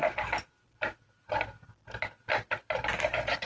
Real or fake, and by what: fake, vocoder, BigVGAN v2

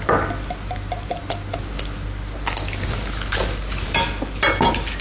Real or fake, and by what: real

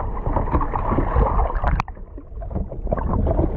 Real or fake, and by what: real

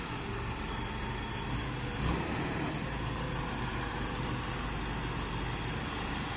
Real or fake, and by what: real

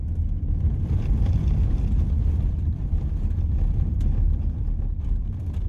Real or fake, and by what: fake, vocoder, BigVGAN v2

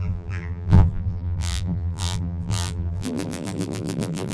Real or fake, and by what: fake, vocoder, BigVGAN v2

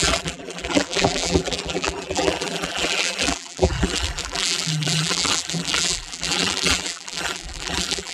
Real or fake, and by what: fake, vocoder, BigVGAN v2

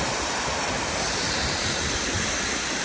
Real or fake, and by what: fake, vocoder, BigVGAN v2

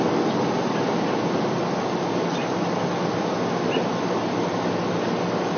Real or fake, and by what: real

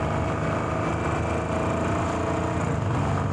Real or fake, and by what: real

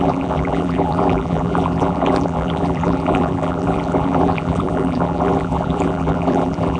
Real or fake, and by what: fake, vocoder, BigVGAN v2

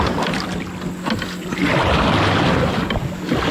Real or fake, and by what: real